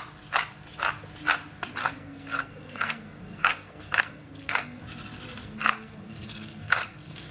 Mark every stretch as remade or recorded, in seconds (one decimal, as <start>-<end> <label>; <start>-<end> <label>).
0.0-1.8 recorded; 1.8-4.8 remade; 4.8-5.4 recorded; 5.4-7.3 remade